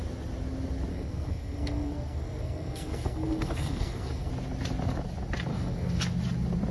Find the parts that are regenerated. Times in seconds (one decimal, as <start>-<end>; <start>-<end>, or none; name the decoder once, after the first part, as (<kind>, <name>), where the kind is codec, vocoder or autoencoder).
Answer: 0.9-4.3 (codec, SNAC); 5.5-6.0